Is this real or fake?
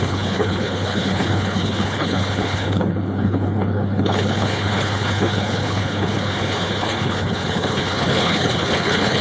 fake